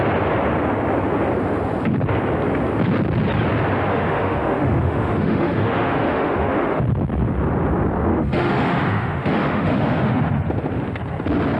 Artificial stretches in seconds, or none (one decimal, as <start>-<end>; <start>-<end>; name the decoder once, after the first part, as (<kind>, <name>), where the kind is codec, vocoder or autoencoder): 3.9-6.8 (autoencoder, DAC-VAE); 8.1-10.2